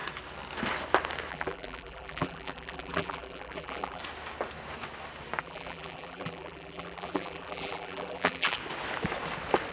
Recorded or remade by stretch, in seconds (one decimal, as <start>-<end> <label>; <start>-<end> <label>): 0.0-1.3 recorded; 1.3-4.0 remade; 4.0-5.4 recorded; 5.4-8.6 remade; 8.6-9.7 recorded